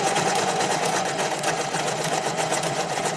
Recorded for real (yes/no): no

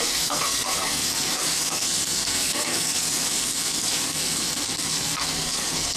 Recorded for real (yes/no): no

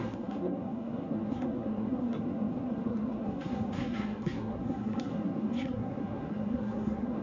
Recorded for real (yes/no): no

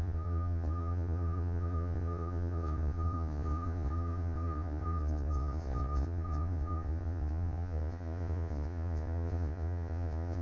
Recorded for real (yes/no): no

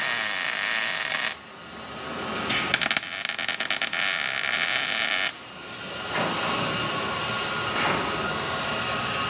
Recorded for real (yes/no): yes